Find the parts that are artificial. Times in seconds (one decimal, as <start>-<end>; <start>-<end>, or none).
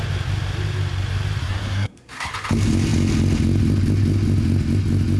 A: 1.4-2.3